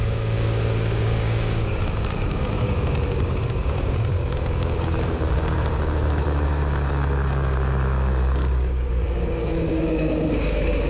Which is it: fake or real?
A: fake